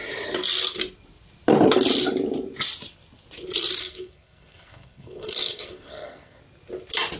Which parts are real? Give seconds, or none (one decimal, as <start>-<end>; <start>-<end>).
0.0-3.8; 6.4-7.2